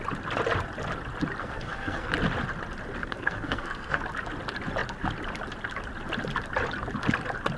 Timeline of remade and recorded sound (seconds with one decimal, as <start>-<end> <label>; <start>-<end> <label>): 0.0-1.4 recorded; 1.4-2.1 remade; 2.1-3.0 recorded; 3.0-4.0 remade; 4.0-7.6 recorded